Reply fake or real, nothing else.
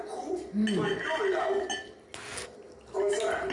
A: real